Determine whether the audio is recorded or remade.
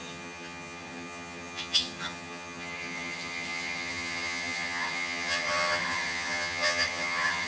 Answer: remade